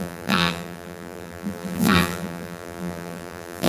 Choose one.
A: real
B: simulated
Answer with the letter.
B